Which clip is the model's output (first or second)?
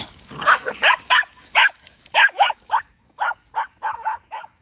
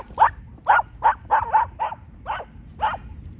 first